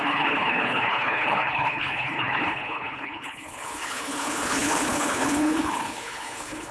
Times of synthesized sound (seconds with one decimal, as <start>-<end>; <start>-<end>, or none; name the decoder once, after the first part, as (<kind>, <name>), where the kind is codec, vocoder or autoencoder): 0.0-6.7 (codec, HILCodec)